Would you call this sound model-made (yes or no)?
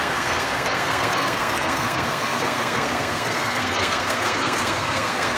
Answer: yes